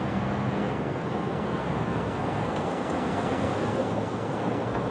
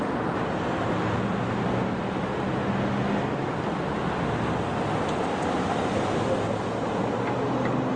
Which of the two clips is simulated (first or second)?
first